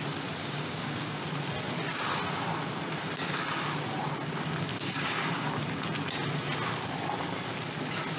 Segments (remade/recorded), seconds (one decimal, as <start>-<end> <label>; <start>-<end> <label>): 0.0-0.4 recorded; 0.4-1.2 remade; 1.2-4.7 recorded; 4.7-5.5 remade; 5.5-8.2 recorded